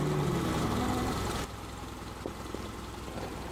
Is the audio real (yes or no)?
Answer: no